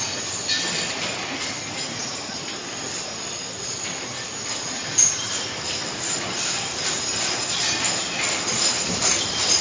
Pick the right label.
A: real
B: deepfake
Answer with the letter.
A